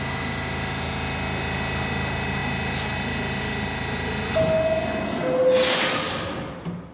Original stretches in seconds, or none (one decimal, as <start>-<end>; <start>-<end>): 0.0-6.9